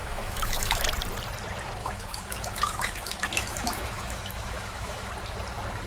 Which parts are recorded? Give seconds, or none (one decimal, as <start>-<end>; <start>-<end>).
0.8-1.8; 5.1-5.9